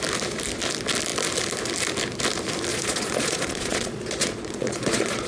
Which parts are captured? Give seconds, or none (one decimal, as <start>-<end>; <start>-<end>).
0.0-2.7